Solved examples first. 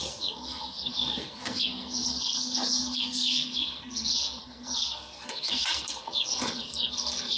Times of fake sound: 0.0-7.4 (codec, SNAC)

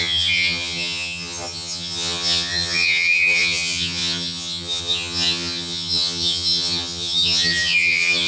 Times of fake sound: 0.0-8.3 (vocoder, HiFi-GAN)

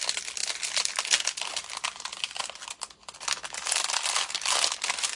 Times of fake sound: none

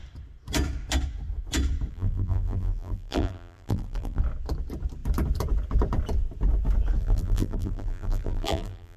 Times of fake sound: 1.9-4.2 (vocoder, BigVGAN v2); 7.0-9.0

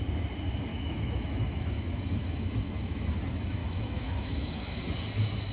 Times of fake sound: 0.7-3.0 (autoencoder, DAC-VAE); 3.6-4.8

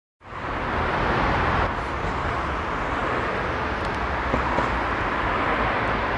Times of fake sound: none

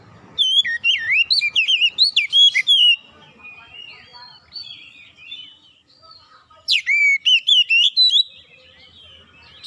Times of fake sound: 1.7-2.3 (vocoder, BigVGAN v2); 4.1-7.5

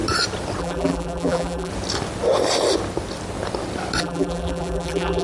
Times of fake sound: 0.6-1.7 (vocoder, BigVGAN v2); 4.0-5.2